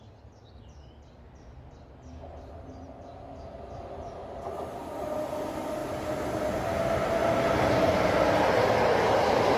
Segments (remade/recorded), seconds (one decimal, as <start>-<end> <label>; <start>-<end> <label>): 0.0-9.6 recorded